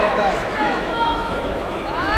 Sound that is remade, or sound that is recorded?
remade